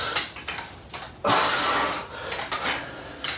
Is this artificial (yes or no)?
no